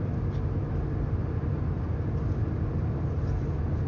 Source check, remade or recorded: recorded